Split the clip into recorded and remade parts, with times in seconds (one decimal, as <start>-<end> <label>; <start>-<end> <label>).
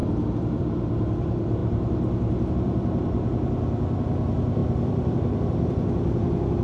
0.0-1.6 remade; 1.6-2.5 recorded; 2.5-6.6 remade